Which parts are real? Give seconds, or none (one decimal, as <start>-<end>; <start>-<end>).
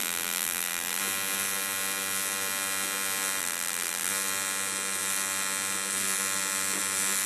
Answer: 1.0-3.4; 4.1-7.3